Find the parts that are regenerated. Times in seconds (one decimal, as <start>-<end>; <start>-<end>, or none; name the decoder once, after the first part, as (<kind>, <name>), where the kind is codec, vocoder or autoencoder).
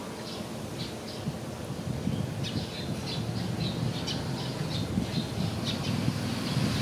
none